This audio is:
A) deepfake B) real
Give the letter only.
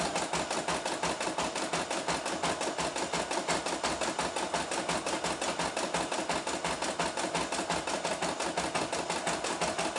B